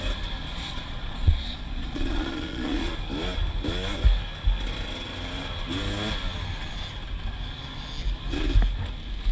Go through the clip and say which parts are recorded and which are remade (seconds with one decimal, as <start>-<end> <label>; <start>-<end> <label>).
0.0-0.4 recorded; 0.4-2.9 remade; 2.9-9.3 recorded